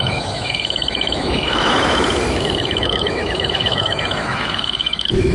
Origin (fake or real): fake